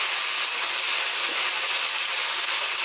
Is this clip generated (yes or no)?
no